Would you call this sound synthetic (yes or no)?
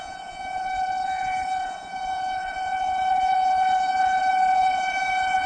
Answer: yes